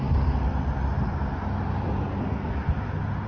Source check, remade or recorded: recorded